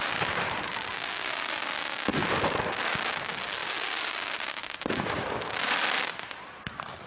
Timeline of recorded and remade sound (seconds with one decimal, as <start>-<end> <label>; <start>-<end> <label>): 0.0-4.6 recorded; 4.6-7.1 remade